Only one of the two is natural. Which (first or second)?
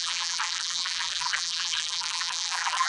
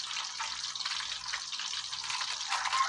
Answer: second